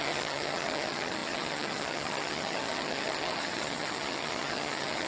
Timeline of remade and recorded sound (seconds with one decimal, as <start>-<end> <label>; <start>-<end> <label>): 0.0-5.1 remade